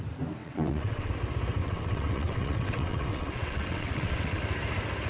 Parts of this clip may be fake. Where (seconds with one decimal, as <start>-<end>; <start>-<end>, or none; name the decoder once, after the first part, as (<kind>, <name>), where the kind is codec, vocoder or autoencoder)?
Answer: 0.4-1.1 (vocoder, WaveNeXt); 1.6-4.4